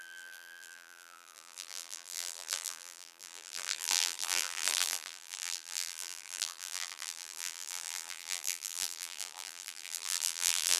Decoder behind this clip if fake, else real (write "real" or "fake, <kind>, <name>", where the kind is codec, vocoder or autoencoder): fake, vocoder, BigVGAN v2